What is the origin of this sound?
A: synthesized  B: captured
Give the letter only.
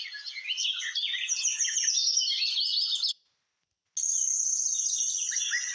B